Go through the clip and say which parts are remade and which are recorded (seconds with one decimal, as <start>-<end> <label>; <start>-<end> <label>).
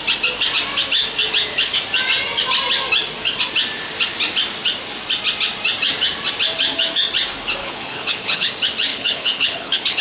0.0-7.6 recorded; 7.6-8.5 remade; 8.5-8.9 recorded; 8.9-10.0 remade